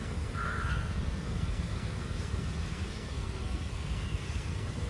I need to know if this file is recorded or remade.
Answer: remade